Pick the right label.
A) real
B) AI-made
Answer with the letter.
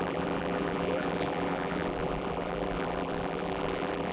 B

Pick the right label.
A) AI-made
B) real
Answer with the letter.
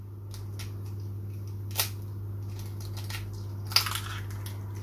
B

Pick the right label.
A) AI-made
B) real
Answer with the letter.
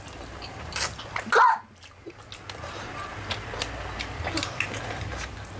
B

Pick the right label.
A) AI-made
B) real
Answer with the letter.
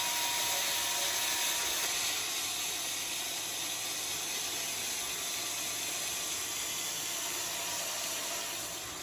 B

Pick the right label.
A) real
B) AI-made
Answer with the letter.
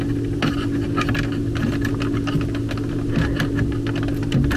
A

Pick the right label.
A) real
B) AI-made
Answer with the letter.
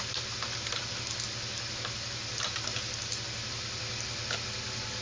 A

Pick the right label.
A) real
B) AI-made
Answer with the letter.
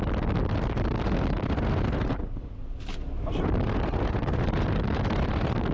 A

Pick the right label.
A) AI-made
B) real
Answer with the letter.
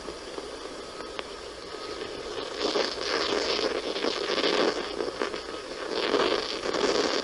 B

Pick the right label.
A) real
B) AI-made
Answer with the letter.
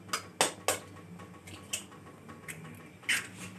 A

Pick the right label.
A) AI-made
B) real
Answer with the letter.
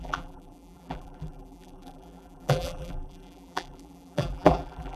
A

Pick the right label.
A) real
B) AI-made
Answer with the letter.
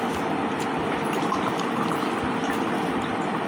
A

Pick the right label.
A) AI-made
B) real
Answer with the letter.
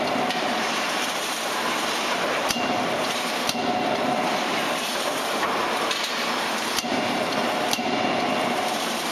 A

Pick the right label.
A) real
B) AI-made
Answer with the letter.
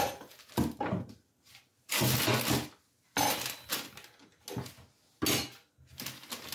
A